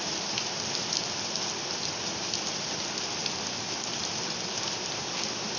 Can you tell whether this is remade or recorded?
recorded